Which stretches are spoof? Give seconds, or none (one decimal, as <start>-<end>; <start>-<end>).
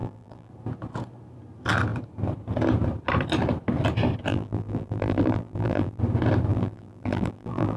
0.0-0.5; 4.3-6.0; 6.5-7.8